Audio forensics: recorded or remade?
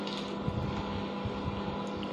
recorded